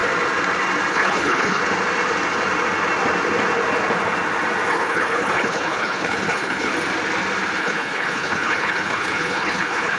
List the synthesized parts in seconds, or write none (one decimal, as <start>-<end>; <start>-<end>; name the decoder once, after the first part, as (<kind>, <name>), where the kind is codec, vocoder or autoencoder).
0.9-1.6 (codec, HILCodec); 4.7-6.7; 7.6-10.0